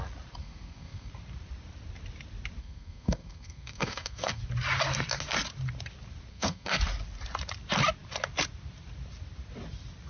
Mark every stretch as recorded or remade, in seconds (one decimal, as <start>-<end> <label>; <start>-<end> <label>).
0.0-0.4 recorded; 0.4-1.1 remade; 1.1-2.6 recorded; 2.6-4.4 remade; 4.4-6.3 recorded; 6.3-6.8 remade; 6.8-10.1 recorded

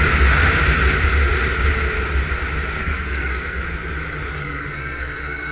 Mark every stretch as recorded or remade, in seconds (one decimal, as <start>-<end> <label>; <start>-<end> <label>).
0.0-2.8 recorded; 2.8-3.6 remade; 3.6-4.3 recorded; 4.3-5.5 remade

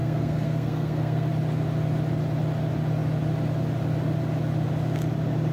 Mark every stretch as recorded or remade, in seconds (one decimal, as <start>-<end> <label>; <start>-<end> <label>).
0.0-1.3 remade; 1.3-5.5 recorded

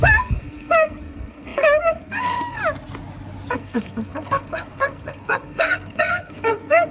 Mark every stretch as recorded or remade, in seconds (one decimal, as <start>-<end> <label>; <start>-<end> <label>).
0.0-2.6 remade; 2.6-3.5 recorded; 3.5-6.9 remade

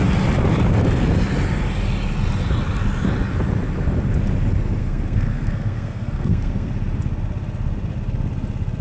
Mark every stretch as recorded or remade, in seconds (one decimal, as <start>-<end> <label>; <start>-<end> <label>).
0.0-4.8 recorded; 4.8-6.7 remade; 6.7-8.8 recorded

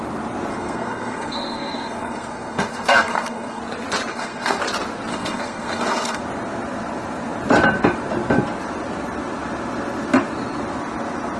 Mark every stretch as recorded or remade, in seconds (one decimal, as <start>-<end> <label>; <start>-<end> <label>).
0.0-0.5 recorded; 0.5-3.6 remade; 3.6-4.1 recorded; 4.1-4.6 remade; 4.6-5.1 recorded; 5.1-6.2 remade; 6.2-11.4 recorded

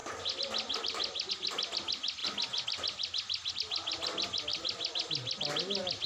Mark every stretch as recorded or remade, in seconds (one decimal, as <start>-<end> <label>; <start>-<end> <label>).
0.0-6.1 recorded

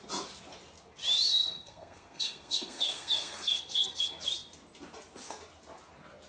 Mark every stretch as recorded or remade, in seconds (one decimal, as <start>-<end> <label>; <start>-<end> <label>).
0.0-1.3 recorded; 1.3-4.0 remade; 4.0-6.3 recorded